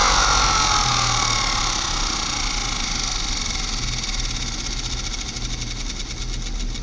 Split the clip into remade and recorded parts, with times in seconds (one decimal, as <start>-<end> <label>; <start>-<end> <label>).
0.0-6.8 recorded